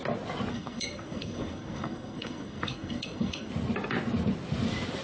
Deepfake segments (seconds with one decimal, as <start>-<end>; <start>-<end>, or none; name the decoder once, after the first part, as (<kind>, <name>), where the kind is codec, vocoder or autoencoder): 0.5-3.5 (codec, SNAC)

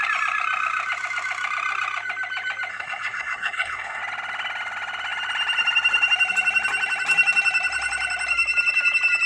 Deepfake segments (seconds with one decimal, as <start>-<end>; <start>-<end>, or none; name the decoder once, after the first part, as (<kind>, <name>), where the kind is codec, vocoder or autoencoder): 2.7-4.0 (codec, SNAC)

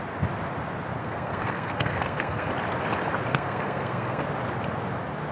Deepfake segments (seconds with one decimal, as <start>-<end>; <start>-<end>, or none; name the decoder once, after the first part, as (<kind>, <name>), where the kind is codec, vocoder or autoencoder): 1.0-2.5 (codec, SNAC); 3.3-4.2

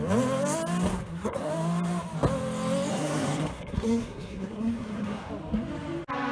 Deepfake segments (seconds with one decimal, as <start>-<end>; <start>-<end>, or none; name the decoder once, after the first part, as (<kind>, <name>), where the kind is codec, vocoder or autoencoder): 0.9-1.5 (codec, SNAC); 2.9-5.3

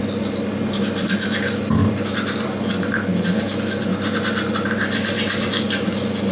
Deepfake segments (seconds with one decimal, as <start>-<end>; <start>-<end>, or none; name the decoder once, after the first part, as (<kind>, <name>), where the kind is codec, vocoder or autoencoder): none

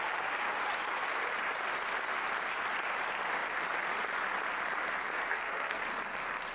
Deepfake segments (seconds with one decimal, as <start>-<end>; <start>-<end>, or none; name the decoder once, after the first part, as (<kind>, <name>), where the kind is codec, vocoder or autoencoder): 5.3-5.8 (codec, SNAC)

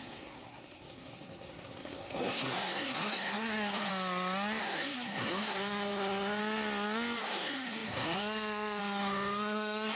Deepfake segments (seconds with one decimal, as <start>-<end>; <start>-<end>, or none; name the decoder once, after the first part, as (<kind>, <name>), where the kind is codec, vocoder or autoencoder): 0.0-3.9 (codec, SNAC); 4.6-6.4; 7.2-10.0